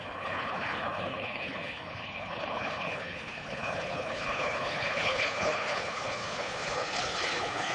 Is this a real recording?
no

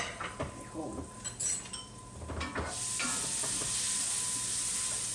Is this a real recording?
yes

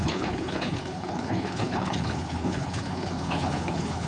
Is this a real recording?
no